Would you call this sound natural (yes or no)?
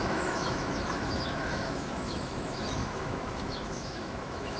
no